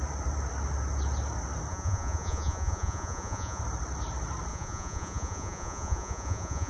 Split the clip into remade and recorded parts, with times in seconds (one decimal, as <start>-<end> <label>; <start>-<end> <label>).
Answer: 0.0-1.7 recorded; 1.7-3.6 remade; 3.6-4.5 recorded; 4.5-6.7 remade